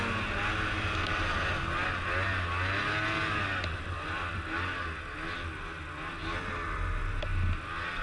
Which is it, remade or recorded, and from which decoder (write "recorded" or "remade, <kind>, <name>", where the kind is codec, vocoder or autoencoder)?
recorded